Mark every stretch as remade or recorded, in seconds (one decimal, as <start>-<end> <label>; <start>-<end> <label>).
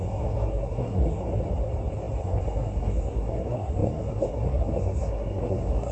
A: 0.0-1.3 remade; 1.3-2.2 recorded; 2.2-5.9 remade